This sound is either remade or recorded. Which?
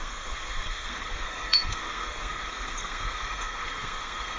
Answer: remade